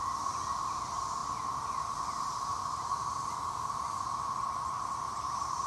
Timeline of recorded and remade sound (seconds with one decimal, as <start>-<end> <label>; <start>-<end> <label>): 0.0-5.7 recorded